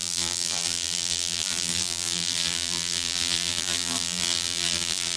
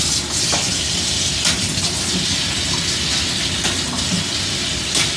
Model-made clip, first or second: first